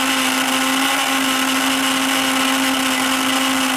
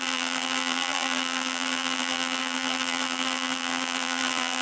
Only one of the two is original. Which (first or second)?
first